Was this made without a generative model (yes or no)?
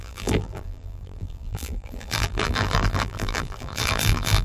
no